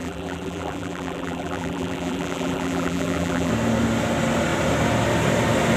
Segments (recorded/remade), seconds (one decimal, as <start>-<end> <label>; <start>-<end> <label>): 0.0-3.5 remade; 3.5-5.8 recorded

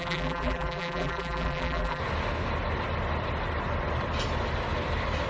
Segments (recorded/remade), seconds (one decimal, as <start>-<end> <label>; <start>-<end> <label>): 0.0-2.0 remade; 2.0-5.3 recorded

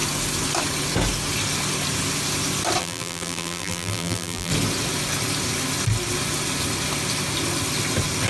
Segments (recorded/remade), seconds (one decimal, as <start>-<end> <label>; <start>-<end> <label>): 0.0-2.8 recorded; 2.8-4.5 remade; 4.5-8.3 recorded

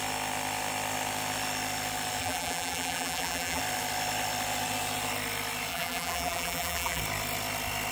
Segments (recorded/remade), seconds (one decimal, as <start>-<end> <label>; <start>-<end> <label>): 0.0-2.2 recorded; 2.2-3.6 remade; 3.6-5.7 recorded; 5.7-7.0 remade; 7.0-7.9 recorded